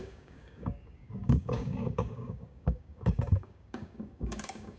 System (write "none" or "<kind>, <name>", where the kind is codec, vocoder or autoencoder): codec, DAC